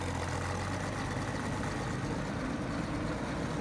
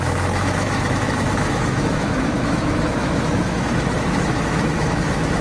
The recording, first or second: first